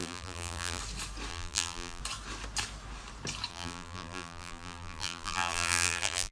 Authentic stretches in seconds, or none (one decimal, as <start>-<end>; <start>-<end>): 0.8-1.3; 2.0-3.5

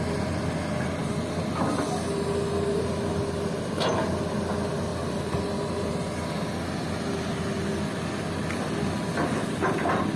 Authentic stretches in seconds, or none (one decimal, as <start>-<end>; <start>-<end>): 0.0-10.2

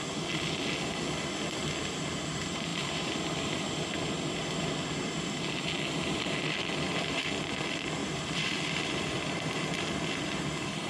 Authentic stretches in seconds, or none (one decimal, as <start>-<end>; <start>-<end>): 0.0-2.7; 3.4-8.0; 9.4-10.9

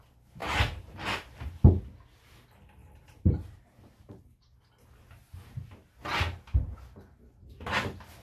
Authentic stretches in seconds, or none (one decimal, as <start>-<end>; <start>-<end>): 0.0-0.4; 1.7-2.8; 4.2-8.2

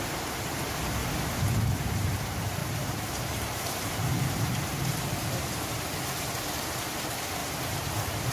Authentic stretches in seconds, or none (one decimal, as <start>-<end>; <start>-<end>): 1.0-1.7; 7.4-7.9

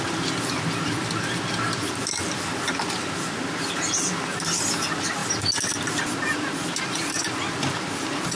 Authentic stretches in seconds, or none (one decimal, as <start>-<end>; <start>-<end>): 0.0-8.4

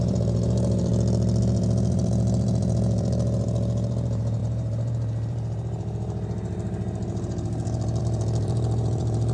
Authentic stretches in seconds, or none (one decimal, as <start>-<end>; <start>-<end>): 0.9-1.4

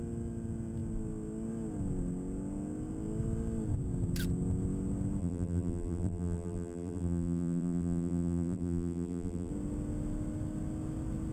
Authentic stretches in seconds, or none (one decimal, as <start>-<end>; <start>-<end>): 0.0-5.2; 9.5-11.3